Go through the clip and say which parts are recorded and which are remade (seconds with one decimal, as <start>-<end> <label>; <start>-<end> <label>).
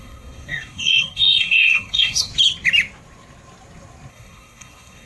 0.0-2.3 remade; 2.3-4.1 recorded; 4.1-5.1 remade